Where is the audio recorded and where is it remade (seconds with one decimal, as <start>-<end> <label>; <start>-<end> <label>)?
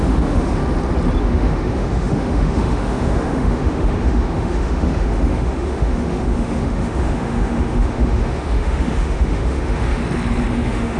0.0-0.6 remade; 0.6-1.2 recorded; 1.2-10.0 remade; 10.0-10.5 recorded; 10.5-11.0 remade